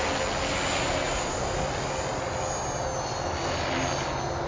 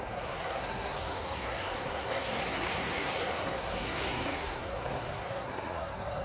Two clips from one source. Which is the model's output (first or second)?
second